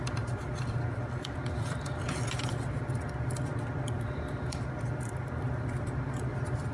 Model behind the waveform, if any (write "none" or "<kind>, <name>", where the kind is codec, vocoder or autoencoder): vocoder, BigVGAN v2